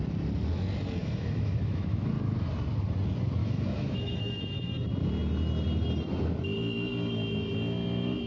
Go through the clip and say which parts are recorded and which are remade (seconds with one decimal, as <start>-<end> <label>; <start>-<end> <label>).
0.0-1.0 recorded; 1.0-2.1 remade; 2.1-3.4 recorded; 3.4-4.4 remade; 4.4-8.3 recorded